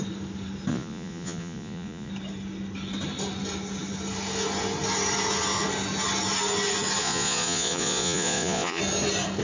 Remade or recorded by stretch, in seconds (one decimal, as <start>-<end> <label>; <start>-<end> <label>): 0.0-0.7 recorded; 0.7-2.1 remade; 2.1-7.0 recorded; 7.0-8.8 remade; 8.8-9.4 recorded